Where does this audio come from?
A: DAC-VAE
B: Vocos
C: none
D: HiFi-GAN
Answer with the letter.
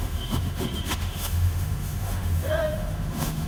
A